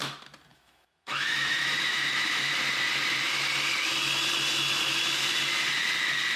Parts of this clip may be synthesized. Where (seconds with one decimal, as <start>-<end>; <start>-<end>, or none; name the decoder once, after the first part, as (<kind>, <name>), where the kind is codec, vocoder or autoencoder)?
0.5-2.5 (autoencoder, DAC-VAE)